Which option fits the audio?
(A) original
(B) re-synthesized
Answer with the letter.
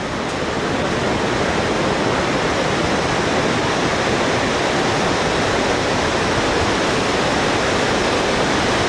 A